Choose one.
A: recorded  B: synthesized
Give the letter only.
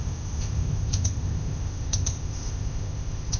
B